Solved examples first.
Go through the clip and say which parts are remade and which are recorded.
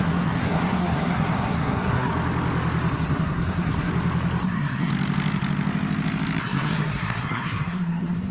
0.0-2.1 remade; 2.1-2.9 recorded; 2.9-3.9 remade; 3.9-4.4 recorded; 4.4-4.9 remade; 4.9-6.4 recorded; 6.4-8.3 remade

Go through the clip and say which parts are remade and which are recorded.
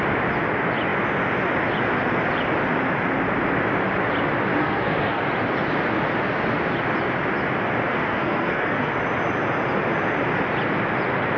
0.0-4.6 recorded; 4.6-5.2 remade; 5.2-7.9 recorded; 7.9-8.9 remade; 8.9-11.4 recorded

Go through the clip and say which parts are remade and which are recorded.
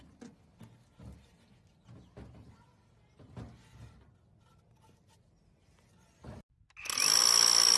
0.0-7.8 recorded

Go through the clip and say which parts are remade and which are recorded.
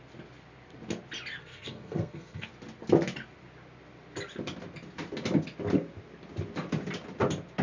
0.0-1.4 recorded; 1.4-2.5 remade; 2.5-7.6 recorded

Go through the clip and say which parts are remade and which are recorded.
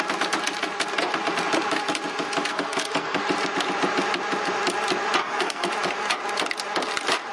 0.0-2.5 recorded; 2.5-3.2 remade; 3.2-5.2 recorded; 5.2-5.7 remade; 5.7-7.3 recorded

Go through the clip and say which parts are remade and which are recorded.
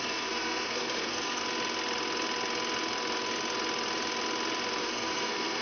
0.0-1.4 remade; 1.4-4.8 recorded; 4.8-5.6 remade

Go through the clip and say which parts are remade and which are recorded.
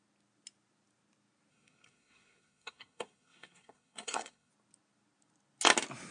0.0-1.5 recorded; 1.5-4.5 remade; 4.5-6.1 recorded